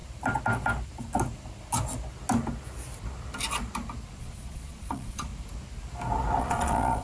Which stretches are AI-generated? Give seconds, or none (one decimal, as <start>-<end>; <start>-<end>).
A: 4.2-5.3; 6.4-7.0